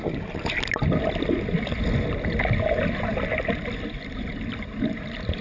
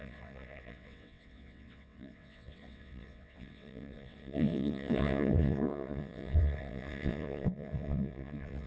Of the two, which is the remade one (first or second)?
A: second